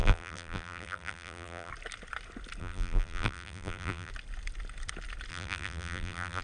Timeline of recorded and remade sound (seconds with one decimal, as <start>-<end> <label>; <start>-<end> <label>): 0.0-1.7 remade; 1.7-2.6 recorded; 2.6-4.1 remade; 4.1-5.3 recorded; 5.3-6.4 remade